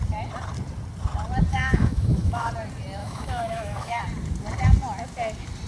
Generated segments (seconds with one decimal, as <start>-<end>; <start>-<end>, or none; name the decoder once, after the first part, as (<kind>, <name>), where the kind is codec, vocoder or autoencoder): 1.5-2.5 (autoencoder, DAC-VAE); 3.0-4.0